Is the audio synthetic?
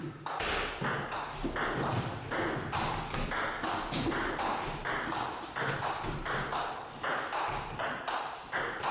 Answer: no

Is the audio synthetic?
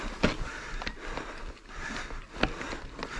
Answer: no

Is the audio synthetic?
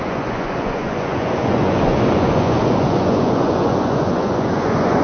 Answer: yes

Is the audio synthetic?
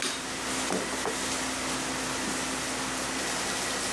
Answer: no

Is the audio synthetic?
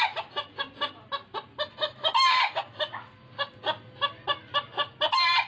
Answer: no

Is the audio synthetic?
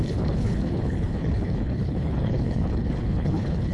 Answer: yes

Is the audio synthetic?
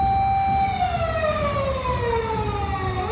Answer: no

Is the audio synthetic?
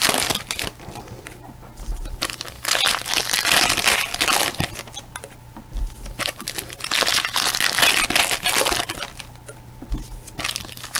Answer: no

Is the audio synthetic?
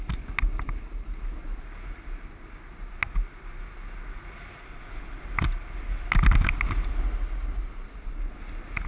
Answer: no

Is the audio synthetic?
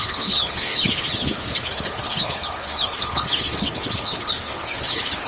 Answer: yes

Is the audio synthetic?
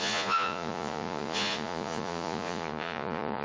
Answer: yes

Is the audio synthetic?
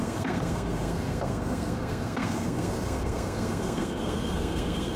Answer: yes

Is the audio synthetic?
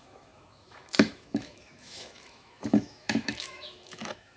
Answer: yes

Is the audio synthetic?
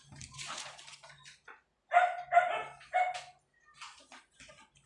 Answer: no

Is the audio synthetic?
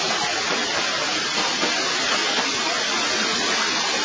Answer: no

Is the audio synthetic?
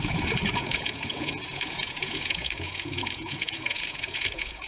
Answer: yes